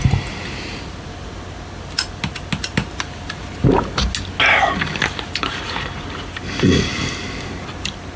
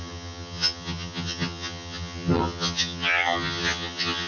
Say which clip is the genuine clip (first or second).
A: first